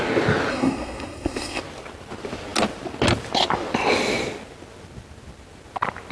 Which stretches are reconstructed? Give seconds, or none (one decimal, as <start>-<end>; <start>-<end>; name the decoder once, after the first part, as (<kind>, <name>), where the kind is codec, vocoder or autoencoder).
0.5-1.6 (codec, SNAC)